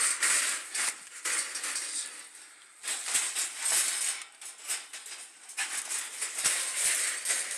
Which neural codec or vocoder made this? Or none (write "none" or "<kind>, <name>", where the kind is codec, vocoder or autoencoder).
none